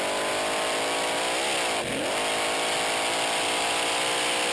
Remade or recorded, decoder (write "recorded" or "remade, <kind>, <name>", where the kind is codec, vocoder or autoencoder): recorded